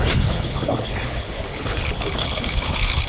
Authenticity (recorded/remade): remade